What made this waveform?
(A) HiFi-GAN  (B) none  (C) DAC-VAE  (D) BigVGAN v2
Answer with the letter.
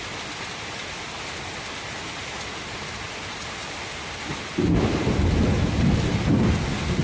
B